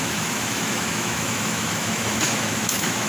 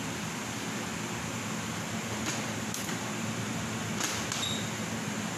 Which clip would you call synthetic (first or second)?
first